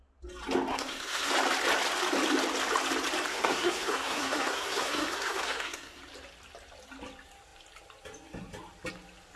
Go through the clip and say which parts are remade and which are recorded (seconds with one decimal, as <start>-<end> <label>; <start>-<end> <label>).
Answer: 0.0-0.7 recorded; 0.7-1.3 remade; 1.3-3.3 recorded; 3.3-6.0 remade; 6.0-9.4 recorded

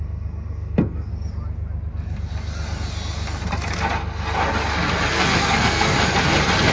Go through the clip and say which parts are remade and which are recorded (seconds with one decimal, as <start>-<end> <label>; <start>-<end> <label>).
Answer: 0.0-1.1 remade; 1.1-5.1 recorded; 5.1-5.9 remade; 5.9-6.7 recorded

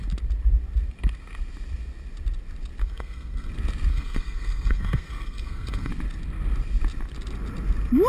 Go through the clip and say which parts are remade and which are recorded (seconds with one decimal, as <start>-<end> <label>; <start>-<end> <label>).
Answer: 0.0-2.8 recorded; 2.8-3.5 remade; 3.5-3.9 recorded; 3.9-5.9 remade; 5.9-8.1 recorded

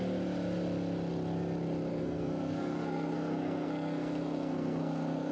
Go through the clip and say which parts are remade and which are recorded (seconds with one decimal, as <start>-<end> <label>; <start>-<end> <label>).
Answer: 0.0-1.9 recorded; 1.9-5.3 remade

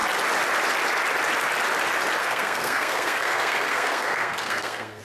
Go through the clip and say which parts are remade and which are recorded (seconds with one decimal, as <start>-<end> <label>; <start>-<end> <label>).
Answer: 0.0-2.2 recorded; 2.2-5.0 remade

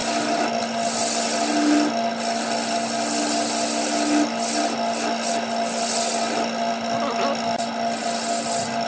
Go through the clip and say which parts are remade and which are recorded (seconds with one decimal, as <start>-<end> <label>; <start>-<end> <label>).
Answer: 0.0-8.9 recorded

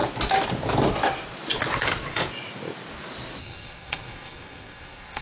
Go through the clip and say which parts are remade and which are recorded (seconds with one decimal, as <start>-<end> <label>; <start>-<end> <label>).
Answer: 0.0-3.4 recorded; 3.4-5.2 remade

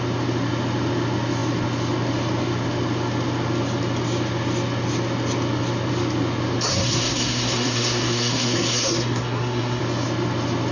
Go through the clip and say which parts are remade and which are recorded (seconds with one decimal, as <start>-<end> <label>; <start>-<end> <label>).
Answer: 0.0-6.7 recorded; 6.7-9.8 remade; 9.8-10.7 recorded